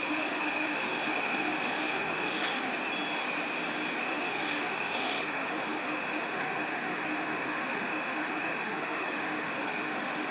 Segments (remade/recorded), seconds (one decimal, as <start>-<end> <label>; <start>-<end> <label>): 0.0-2.7 remade; 2.7-4.0 recorded; 4.0-10.3 remade